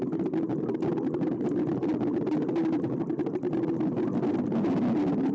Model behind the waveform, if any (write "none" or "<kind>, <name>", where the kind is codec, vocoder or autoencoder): none